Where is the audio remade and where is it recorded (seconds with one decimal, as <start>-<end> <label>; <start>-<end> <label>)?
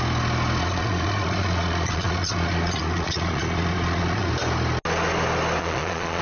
0.0-0.6 recorded; 0.6-4.3 remade; 4.3-5.6 recorded; 5.6-6.2 remade